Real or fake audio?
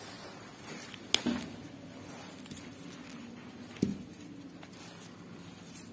real